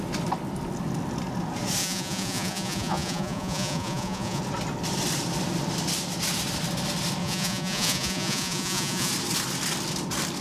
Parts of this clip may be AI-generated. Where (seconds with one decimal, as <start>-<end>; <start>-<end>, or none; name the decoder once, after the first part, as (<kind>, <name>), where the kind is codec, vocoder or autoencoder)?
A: 1.8-4.4 (vocoder, Vocos); 7.2-9.1